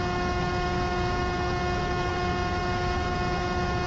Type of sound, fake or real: real